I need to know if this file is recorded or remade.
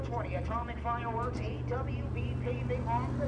recorded